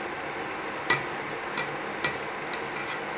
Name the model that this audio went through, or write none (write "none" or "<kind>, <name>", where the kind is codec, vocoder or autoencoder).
none